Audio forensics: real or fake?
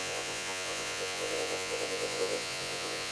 fake